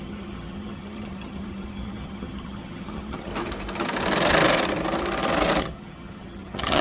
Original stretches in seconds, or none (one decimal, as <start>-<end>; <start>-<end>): 3.3-5.6